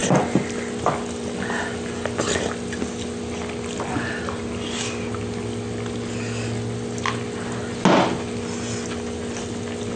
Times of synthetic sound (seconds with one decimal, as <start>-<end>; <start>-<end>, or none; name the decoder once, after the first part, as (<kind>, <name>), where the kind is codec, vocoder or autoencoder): none